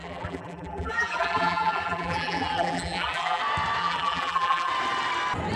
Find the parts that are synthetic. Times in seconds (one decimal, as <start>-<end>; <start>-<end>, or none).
0.0-3.4; 3.8-4.7